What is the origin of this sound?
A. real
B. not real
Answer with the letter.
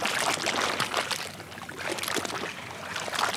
A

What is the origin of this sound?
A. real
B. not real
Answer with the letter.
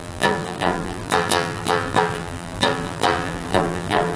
B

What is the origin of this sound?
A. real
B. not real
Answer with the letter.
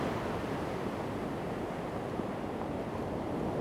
A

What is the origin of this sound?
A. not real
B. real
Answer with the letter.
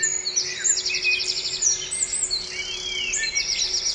B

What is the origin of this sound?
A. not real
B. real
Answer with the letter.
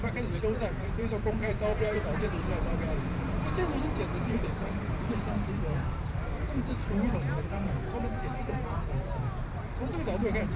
A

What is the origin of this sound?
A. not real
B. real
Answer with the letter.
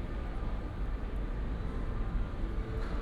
B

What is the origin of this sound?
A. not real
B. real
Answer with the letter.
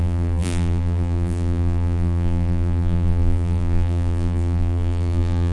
A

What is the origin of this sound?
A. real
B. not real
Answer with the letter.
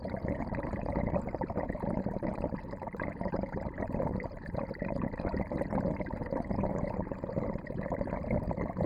B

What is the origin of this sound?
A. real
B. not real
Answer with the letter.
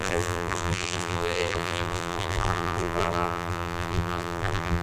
B